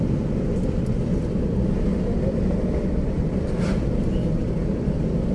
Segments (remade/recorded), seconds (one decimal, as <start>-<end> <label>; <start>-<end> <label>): 0.0-5.3 recorded